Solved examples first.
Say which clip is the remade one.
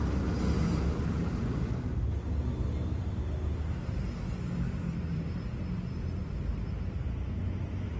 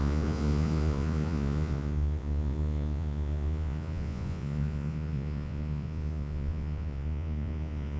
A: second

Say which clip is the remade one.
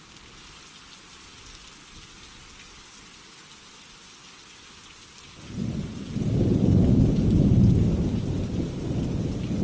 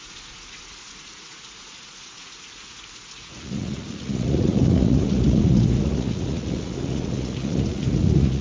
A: second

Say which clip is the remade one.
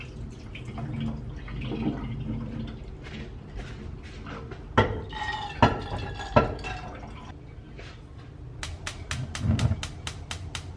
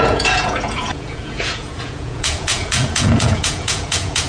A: second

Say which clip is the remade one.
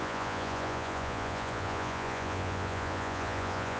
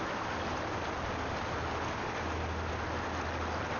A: first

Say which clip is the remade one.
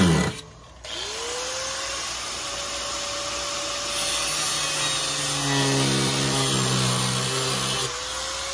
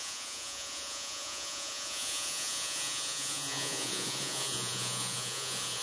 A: second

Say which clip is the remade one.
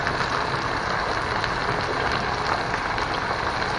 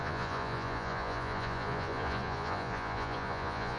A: second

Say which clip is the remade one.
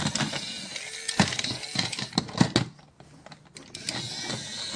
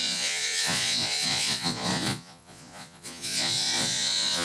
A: second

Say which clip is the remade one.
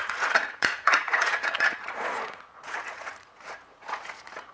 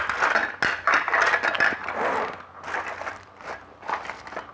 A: first